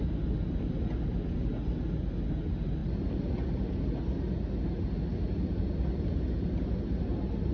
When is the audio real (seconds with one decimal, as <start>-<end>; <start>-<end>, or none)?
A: 0.0-7.5